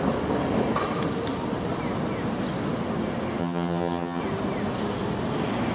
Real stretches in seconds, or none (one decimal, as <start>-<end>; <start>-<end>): 0.0-3.4; 4.2-5.7